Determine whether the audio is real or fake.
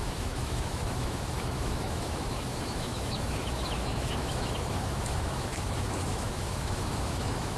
fake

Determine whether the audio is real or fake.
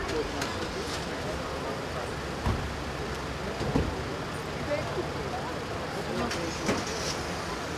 real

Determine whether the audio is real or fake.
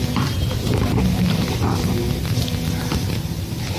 fake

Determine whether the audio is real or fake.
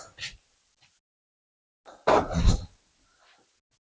real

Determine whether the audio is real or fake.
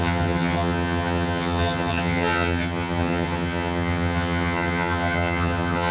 fake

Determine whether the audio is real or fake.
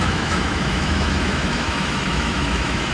fake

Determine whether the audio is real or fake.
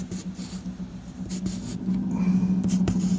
real